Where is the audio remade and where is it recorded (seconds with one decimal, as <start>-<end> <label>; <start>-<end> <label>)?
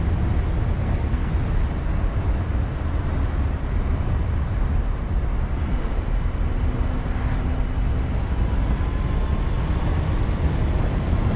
0.0-0.8 recorded; 0.8-1.3 remade; 1.3-11.4 recorded